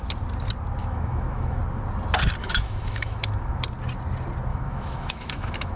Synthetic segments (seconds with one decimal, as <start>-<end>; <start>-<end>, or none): 0.8-1.6; 2.4-3.6; 4.5-5.8